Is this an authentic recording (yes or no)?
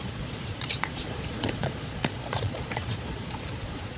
no